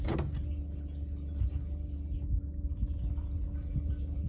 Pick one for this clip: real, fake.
real